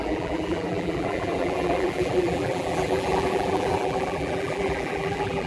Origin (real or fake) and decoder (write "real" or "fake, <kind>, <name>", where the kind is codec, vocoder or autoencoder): fake, vocoder, BigVGAN v2